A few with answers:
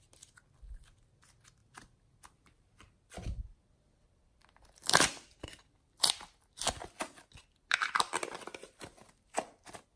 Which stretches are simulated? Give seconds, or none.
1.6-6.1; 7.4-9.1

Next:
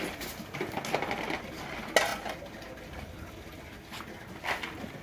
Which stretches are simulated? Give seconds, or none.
none

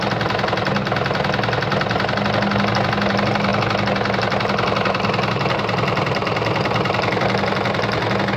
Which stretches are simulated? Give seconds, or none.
none

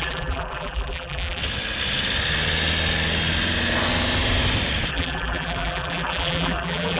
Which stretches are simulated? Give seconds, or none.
0.0-1.4; 4.9-7.0

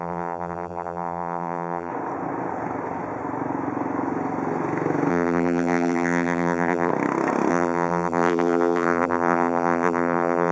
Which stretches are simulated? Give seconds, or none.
0.0-1.9; 5.1-6.9; 7.5-10.5

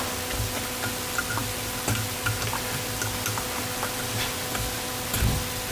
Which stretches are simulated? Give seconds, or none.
none

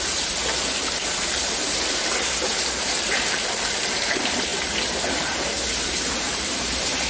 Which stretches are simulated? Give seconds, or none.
0.0-0.4; 1.1-4.5; 5.7-7.1